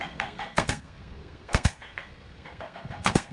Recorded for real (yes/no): no